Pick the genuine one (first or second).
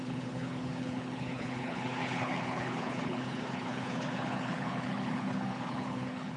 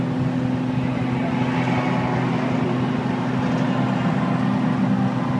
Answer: second